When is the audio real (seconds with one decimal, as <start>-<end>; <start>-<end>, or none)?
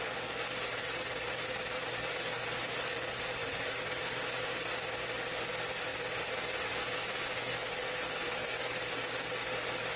0.0-3.4; 4.0-10.0